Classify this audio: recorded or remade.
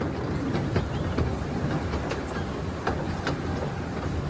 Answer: recorded